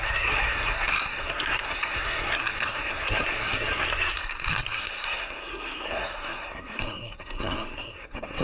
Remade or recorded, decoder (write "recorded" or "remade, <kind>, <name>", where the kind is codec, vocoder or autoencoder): remade, codec, SNAC